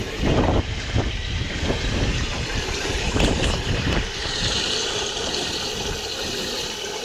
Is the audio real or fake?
fake